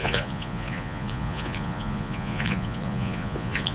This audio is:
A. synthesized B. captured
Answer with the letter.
A